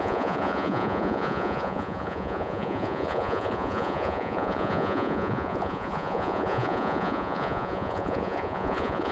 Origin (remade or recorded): remade